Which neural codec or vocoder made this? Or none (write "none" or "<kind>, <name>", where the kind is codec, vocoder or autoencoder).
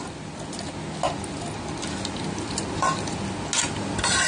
none